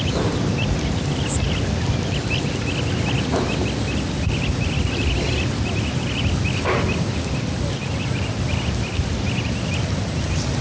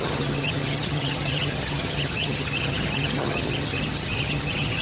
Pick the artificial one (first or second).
second